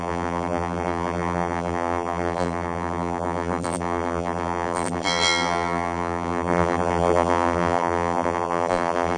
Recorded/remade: remade